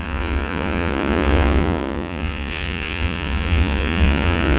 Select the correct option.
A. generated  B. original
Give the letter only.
A